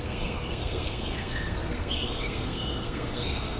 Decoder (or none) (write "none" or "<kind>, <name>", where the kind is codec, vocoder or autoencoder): codec, SNAC